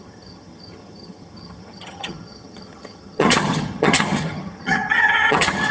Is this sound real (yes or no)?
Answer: no